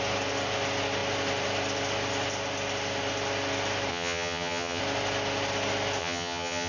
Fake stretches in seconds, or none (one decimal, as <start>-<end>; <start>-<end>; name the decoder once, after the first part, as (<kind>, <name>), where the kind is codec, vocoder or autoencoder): 3.9-4.8 (vocoder, HiFi-GAN); 6.0-6.7